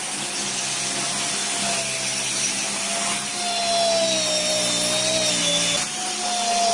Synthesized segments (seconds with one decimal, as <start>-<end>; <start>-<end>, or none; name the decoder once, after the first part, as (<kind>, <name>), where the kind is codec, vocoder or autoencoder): none